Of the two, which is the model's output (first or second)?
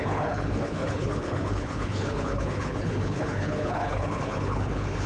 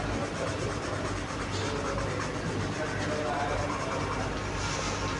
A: first